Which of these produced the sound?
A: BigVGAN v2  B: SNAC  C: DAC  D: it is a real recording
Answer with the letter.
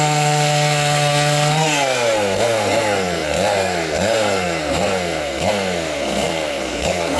B